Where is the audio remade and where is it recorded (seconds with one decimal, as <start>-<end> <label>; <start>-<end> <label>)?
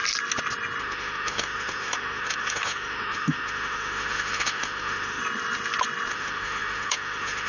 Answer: 0.0-0.8 recorded; 0.8-5.2 remade; 5.2-6.1 recorded; 6.1-7.5 remade